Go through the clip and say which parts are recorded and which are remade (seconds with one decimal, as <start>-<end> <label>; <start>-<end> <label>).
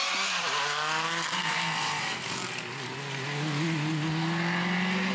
0.0-5.1 recorded